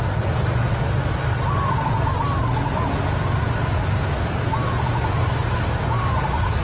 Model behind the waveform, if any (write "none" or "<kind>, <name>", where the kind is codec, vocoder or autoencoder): none